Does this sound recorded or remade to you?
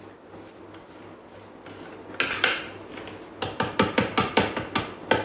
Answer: recorded